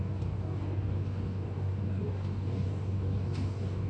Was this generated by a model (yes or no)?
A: yes